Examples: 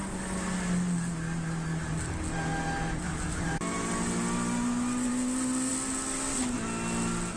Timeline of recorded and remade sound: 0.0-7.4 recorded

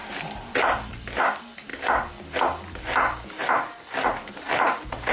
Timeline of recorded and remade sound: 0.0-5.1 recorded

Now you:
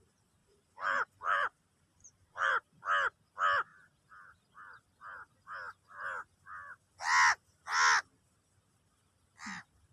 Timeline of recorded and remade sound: 0.0-0.4 recorded; 0.4-2.5 remade; 2.5-9.9 recorded